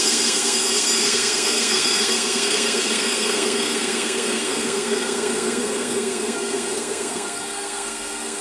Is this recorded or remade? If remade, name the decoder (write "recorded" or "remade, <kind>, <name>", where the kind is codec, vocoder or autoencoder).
remade, codec, SNAC